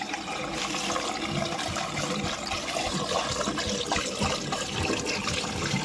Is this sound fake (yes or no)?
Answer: no